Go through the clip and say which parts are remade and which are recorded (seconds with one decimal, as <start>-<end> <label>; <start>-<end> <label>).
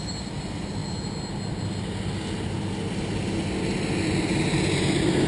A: 0.0-5.3 recorded